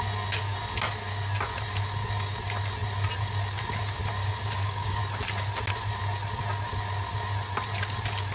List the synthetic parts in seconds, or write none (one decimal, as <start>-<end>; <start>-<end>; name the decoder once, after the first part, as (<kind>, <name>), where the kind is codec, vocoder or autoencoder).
4.2-5.0 (codec, DAC)